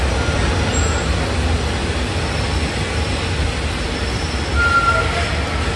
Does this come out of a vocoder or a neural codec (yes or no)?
no